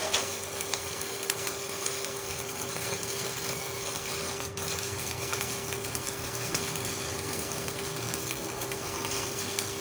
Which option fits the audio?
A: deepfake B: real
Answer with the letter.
A